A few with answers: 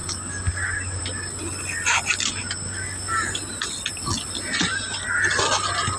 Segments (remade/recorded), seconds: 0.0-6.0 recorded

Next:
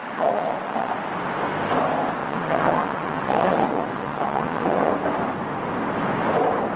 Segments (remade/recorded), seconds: 0.0-0.9 remade; 0.9-2.2 recorded; 2.2-4.9 remade; 4.9-6.8 recorded

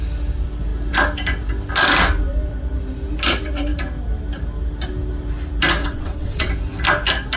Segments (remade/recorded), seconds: 0.0-5.8 recorded; 5.8-6.5 remade; 6.5-7.4 recorded

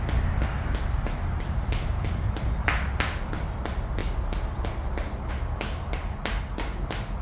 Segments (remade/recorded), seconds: 0.0-7.2 recorded